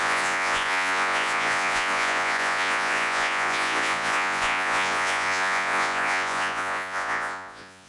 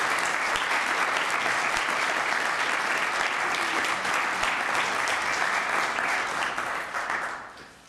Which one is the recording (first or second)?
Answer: second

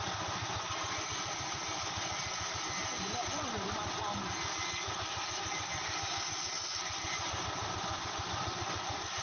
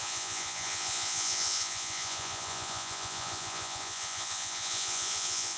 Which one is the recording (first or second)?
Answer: first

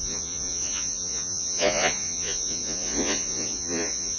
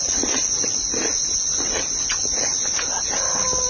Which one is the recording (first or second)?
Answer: second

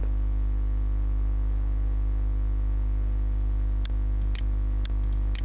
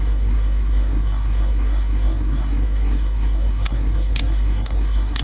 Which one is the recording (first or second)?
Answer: first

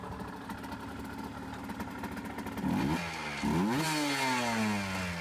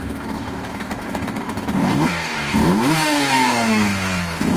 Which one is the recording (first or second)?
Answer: first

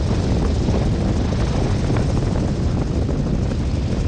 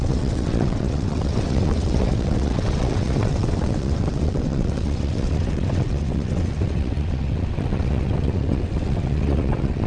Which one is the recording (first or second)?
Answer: first